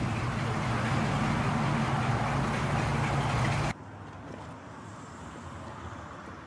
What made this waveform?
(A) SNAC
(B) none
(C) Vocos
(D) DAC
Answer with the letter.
B